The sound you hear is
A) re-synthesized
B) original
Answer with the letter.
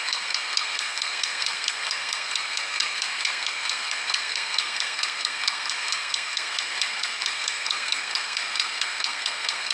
A